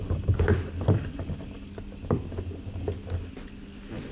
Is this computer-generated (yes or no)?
no